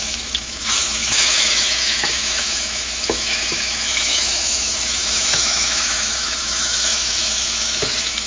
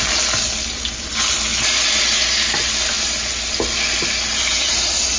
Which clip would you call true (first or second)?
second